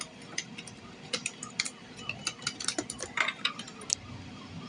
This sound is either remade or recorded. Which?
recorded